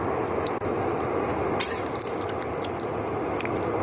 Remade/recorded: recorded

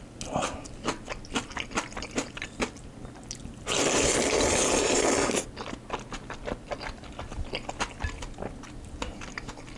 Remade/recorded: recorded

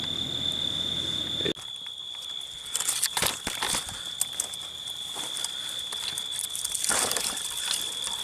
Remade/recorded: recorded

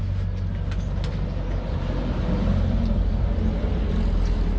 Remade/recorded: recorded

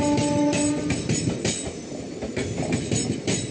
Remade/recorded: recorded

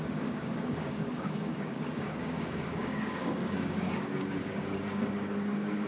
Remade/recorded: remade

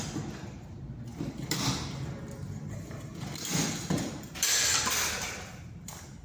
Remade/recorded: recorded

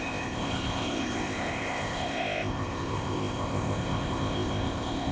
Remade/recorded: remade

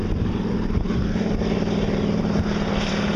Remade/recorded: remade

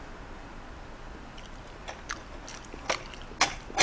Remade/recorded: recorded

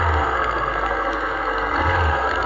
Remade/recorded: remade